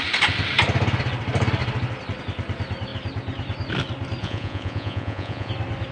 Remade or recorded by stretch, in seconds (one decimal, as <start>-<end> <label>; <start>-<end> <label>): 0.0-4.2 recorded; 4.2-5.5 remade; 5.5-5.9 recorded